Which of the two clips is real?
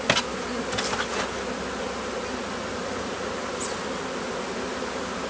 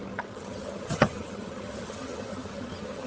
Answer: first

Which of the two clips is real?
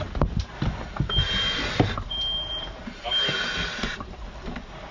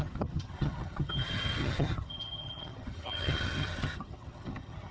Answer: first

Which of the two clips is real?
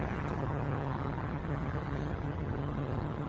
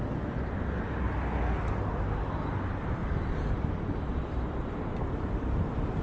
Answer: second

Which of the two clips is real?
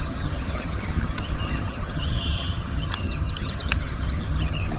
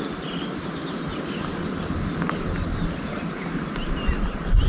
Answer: second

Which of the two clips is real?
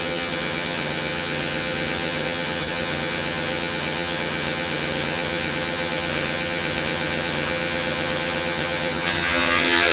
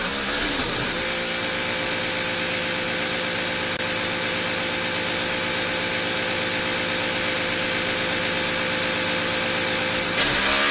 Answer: second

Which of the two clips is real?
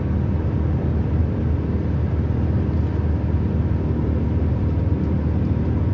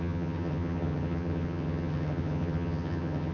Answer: first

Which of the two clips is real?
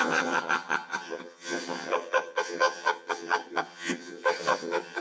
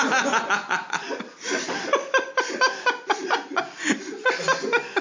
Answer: second